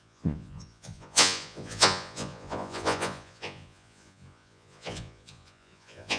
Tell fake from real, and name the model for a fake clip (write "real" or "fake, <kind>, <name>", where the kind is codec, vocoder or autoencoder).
fake, vocoder, Vocos